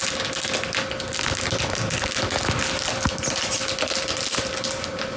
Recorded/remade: recorded